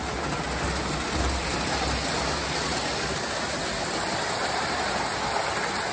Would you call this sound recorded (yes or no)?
yes